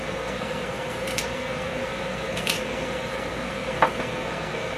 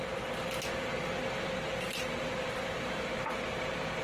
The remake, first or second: first